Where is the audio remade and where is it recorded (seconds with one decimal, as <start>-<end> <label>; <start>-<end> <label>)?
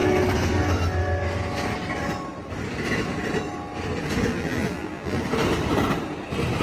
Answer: 0.0-4.3 recorded; 4.3-5.2 remade; 5.2-6.6 recorded